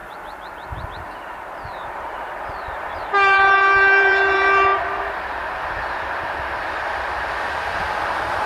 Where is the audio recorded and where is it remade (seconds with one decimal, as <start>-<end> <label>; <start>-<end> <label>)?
0.0-4.7 remade; 4.7-7.7 recorded; 7.7-8.5 remade